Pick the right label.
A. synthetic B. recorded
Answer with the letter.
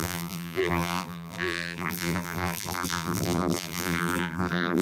A